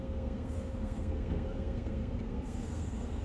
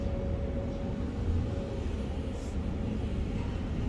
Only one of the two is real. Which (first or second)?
second